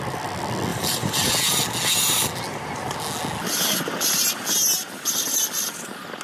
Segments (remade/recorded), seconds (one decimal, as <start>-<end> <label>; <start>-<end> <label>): 0.0-0.7 recorded; 0.7-1.3 remade; 1.3-6.2 recorded